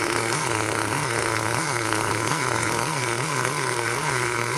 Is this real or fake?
fake